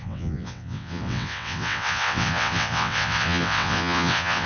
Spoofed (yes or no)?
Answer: yes